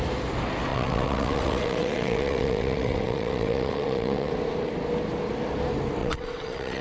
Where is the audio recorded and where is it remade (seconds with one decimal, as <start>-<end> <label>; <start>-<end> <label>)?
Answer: 0.0-0.7 recorded; 0.7-4.3 remade; 4.3-6.0 recorded; 6.0-6.8 remade